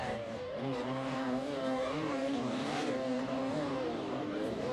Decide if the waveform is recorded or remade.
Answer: remade